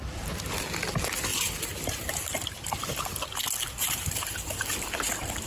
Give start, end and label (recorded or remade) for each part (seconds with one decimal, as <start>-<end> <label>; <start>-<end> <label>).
0.0-1.3 recorded; 1.3-2.8 remade; 2.8-3.8 recorded; 3.8-4.6 remade; 4.6-5.5 recorded